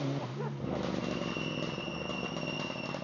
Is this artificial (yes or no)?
no